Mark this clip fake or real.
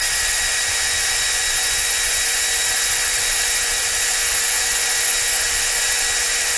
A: fake